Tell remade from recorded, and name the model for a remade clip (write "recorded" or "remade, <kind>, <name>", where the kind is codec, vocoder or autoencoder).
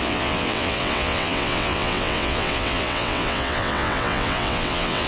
remade, vocoder, WaveNeXt